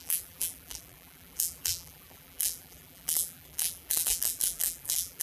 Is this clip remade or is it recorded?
remade